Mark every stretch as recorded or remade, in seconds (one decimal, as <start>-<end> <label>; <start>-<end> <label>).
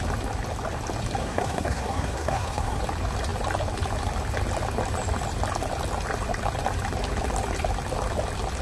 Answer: 0.0-1.2 recorded; 1.2-2.8 remade; 2.8-8.6 recorded